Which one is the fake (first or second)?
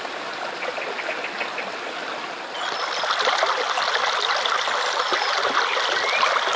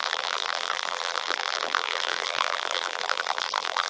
second